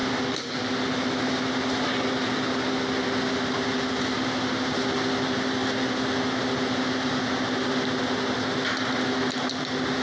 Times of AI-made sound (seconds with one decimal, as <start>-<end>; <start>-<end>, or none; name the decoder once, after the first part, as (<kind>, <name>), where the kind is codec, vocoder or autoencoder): none